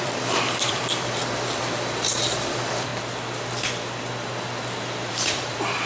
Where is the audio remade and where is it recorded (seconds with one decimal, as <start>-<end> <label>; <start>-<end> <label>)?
0.0-2.9 remade; 2.9-5.1 recorded; 5.1-5.9 remade